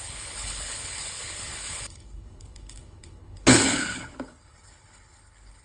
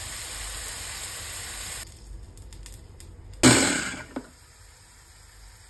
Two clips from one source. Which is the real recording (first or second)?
second